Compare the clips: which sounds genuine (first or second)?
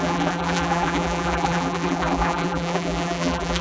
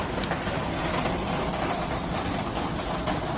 second